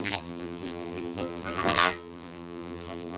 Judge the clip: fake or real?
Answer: fake